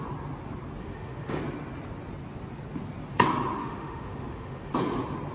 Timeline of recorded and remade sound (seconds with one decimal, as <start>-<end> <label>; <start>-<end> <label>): 0.0-0.8 recorded; 0.8-1.4 remade; 1.4-3.6 recorded; 3.6-4.7 remade; 4.7-5.3 recorded